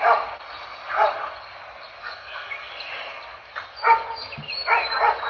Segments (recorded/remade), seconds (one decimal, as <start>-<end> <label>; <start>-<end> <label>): 0.0-2.0 recorded; 2.0-2.7 remade; 2.7-5.3 recorded